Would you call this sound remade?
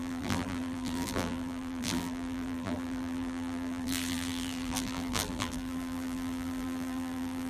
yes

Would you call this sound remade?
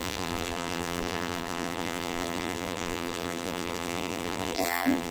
yes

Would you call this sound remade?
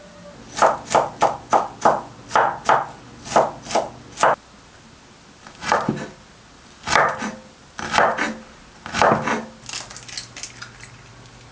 no